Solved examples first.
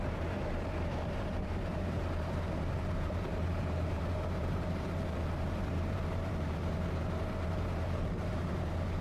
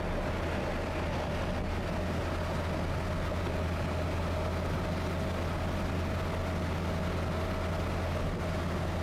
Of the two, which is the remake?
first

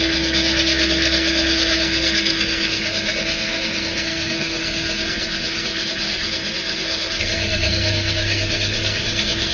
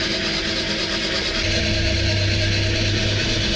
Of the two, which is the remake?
first